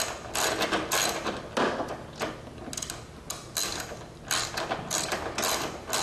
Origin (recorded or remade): recorded